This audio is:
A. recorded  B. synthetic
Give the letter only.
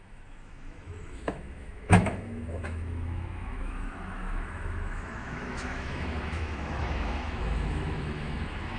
B